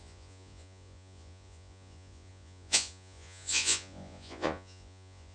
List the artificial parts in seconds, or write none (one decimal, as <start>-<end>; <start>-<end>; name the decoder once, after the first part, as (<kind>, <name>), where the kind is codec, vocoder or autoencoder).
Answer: 0.0-5.3 (vocoder, Vocos)